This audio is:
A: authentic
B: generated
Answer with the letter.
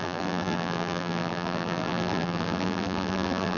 B